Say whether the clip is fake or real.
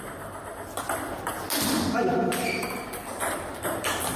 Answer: real